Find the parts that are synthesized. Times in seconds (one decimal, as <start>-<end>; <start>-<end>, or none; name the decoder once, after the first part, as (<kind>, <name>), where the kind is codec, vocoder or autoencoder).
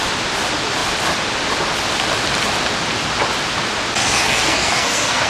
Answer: 4.0-5.3 (codec, SNAC)